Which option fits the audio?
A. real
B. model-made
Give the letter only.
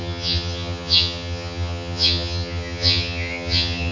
B